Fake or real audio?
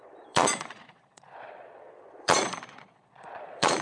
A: fake